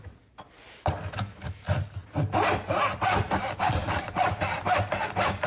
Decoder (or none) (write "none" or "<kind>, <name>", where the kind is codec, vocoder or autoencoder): none